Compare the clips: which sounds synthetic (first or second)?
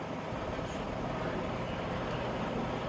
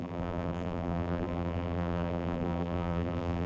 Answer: second